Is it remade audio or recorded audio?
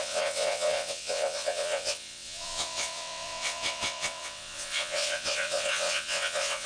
remade